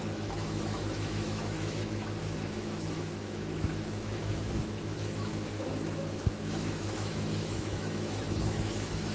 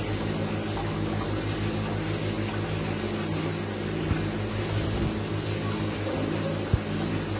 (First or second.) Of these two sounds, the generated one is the first